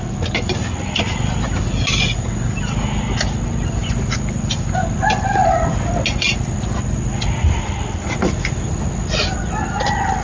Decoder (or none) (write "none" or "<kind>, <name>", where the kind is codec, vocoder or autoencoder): none